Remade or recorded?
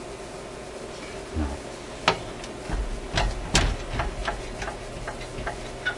recorded